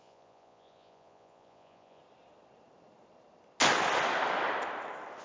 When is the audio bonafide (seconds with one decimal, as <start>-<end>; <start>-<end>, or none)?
2.0-5.2